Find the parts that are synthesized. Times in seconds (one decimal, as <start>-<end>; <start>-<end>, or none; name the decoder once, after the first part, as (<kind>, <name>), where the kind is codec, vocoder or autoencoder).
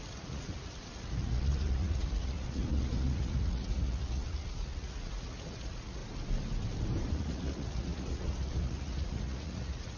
0.0-6.0 (vocoder, Vocos); 7.1-10.0